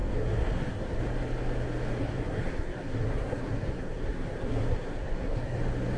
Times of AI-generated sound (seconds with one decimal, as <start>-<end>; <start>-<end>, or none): 0.0-1.0; 2.0-5.6